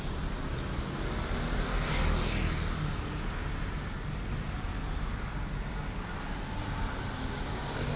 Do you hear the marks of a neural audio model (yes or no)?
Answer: no